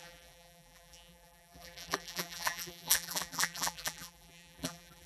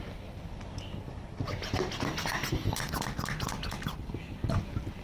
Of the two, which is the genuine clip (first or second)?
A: second